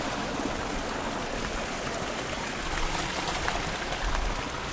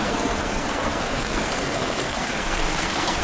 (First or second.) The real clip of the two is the first